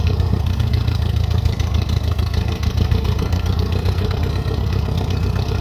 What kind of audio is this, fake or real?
fake